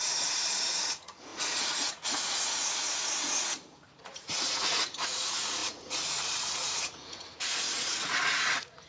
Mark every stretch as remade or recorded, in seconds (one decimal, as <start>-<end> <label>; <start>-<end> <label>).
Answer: 0.0-8.9 remade